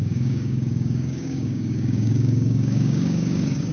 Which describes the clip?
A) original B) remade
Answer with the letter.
B